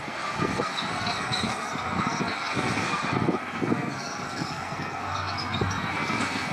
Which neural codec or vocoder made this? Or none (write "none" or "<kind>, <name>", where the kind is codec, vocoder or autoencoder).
codec, SNAC